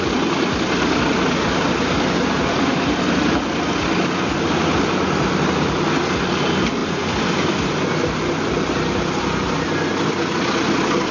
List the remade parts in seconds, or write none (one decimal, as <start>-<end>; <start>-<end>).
none